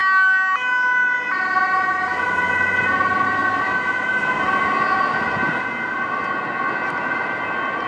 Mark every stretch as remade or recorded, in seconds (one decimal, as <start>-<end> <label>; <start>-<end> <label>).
0.0-7.9 recorded